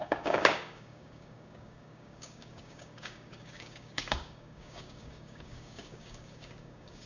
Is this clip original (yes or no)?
no